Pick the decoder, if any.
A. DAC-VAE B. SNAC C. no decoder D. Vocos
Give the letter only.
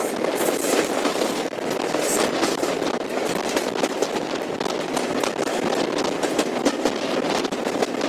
C